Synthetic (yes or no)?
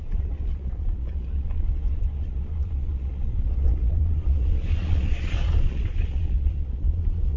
yes